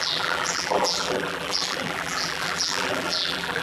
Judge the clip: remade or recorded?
remade